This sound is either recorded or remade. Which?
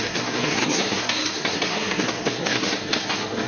remade